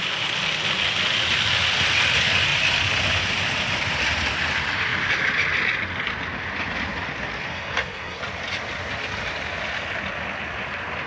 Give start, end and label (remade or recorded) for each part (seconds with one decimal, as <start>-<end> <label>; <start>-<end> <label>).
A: 0.0-7.5 recorded; 7.5-8.2 remade; 8.2-11.1 recorded